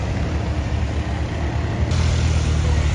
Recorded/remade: recorded